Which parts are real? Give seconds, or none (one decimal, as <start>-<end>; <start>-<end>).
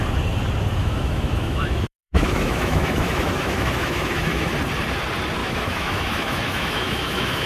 0.0-0.8; 4.5-5.4